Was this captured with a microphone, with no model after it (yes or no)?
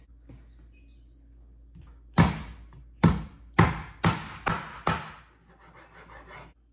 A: yes